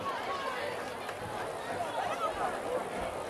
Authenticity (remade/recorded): recorded